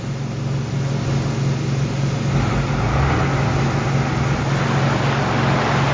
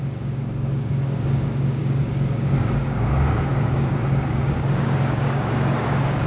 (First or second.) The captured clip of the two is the first